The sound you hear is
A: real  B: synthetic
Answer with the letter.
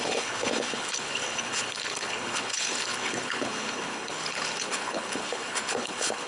B